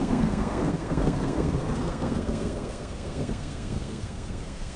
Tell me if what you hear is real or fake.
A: fake